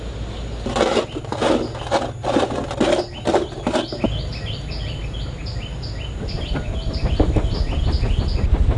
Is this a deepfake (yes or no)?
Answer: no